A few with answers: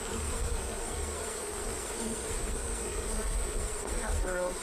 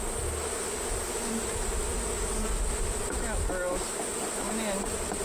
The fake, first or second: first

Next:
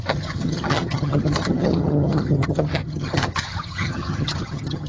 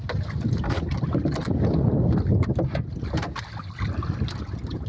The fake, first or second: first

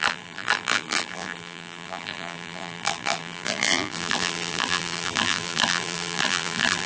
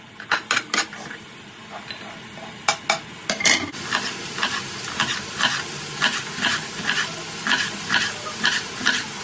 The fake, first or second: first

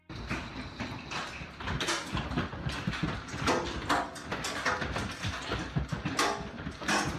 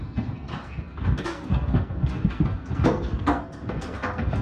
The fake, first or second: second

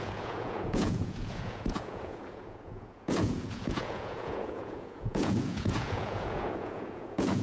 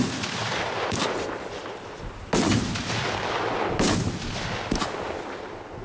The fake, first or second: first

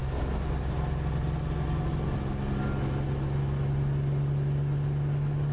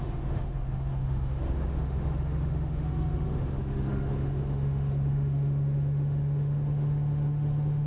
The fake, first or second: second